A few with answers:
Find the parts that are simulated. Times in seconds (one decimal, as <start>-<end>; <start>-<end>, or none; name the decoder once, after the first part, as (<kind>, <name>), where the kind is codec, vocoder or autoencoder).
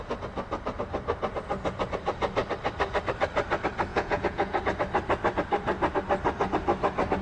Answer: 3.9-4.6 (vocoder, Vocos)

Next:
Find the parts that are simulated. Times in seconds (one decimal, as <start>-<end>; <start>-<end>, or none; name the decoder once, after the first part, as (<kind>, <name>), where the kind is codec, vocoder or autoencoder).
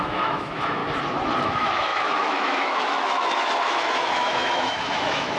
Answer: 0.0-0.8 (autoencoder, DAC-VAE); 1.4-5.4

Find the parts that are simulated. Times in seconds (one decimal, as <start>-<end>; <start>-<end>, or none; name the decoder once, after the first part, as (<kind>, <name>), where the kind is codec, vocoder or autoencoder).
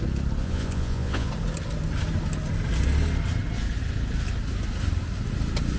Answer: 0.4-1.3 (vocoder, Vocos)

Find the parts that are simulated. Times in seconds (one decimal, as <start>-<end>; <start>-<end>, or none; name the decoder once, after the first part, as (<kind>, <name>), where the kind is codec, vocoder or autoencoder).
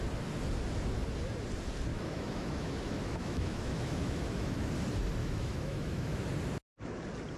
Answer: 1.9-4.7 (autoencoder, DAC-VAE); 5.2-6.2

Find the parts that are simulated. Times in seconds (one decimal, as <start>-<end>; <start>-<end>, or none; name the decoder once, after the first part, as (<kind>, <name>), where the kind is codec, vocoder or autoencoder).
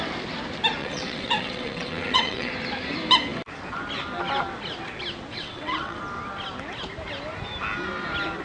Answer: 0.8-2.5 (vocoder, WaveNeXt); 5.3-6.0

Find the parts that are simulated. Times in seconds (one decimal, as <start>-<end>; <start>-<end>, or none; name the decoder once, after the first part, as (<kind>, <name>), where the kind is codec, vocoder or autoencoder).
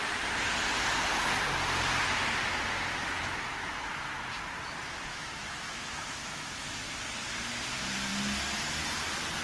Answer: 3.0-4.1 (autoencoder, DAC-VAE); 5.1-7.0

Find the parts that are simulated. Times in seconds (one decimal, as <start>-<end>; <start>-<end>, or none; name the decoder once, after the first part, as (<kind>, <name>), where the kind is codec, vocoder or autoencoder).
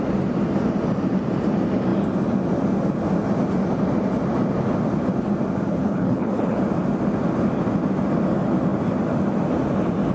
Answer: 5.7-6.6 (codec, HILCodec)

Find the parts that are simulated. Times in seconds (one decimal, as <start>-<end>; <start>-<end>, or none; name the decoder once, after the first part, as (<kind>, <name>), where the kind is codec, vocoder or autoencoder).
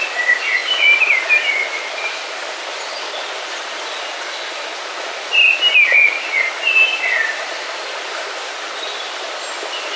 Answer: none